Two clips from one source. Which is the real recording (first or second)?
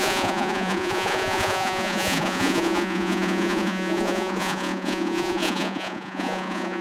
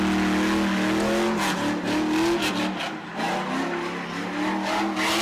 second